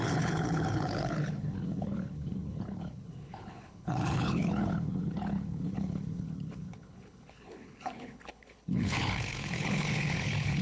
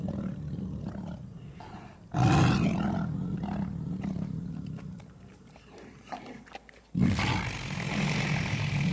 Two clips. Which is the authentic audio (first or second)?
second